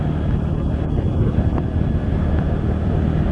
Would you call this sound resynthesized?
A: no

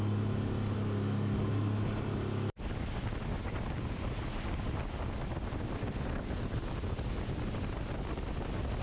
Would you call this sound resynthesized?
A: no